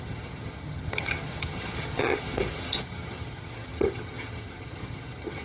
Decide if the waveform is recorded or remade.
remade